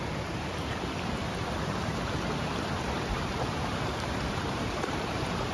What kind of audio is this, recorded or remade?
remade